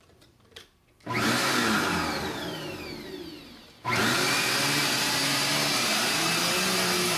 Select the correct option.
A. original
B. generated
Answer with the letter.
A